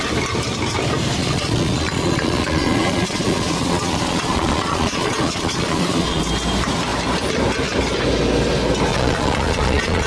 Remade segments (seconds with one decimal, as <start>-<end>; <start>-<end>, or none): 1.2-6.2; 8.9-10.1